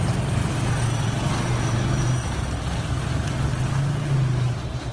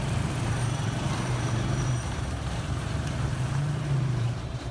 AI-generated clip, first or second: second